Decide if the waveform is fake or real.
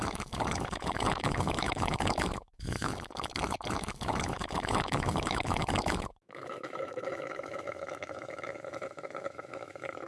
fake